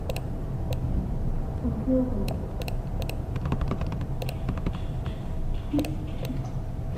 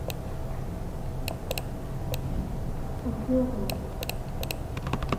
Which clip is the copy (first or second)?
first